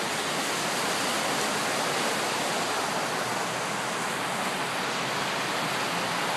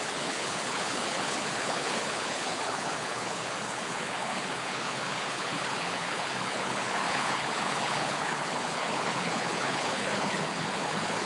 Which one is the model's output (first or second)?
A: second